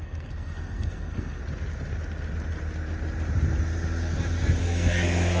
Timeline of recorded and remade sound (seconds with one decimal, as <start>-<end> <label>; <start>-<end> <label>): 0.0-1.4 remade; 1.4-4.6 recorded; 4.6-5.4 remade